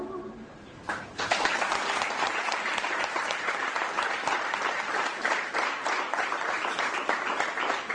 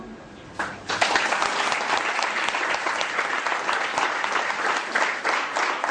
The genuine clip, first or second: second